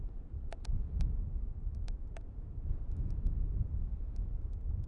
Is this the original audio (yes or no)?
no